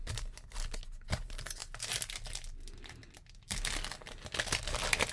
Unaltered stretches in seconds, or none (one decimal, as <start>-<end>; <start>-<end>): 0.0-5.1